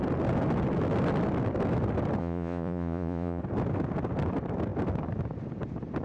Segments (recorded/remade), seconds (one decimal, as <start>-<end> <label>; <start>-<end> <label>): 0.0-2.2 recorded; 2.2-3.4 remade; 3.4-6.0 recorded